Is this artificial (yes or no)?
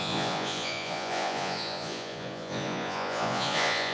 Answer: yes